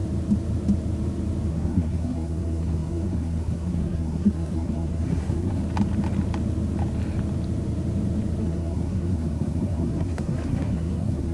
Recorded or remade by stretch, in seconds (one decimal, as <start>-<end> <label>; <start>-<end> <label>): 0.0-1.5 recorded; 1.5-5.6 remade; 5.6-8.4 recorded; 8.4-11.3 remade